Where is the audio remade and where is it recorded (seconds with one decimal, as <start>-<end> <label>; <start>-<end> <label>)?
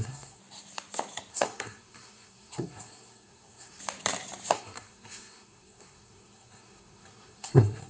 0.0-0.4 remade; 0.4-1.3 recorded; 1.3-3.8 remade; 3.8-4.5 recorded; 4.5-7.9 remade